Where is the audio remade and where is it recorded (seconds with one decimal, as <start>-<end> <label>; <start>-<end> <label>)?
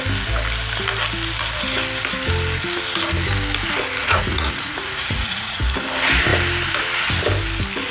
0.0-4.0 recorded; 4.0-5.6 remade; 5.6-7.9 recorded